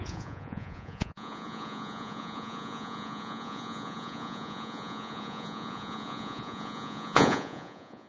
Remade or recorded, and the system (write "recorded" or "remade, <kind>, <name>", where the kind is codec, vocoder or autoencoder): remade, vocoder, Vocos